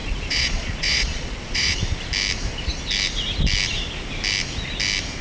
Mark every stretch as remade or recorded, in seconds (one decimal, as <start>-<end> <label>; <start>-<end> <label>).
0.0-1.8 remade; 1.8-5.2 recorded